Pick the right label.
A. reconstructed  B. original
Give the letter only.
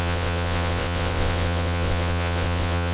A